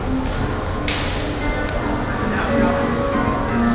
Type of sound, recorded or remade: recorded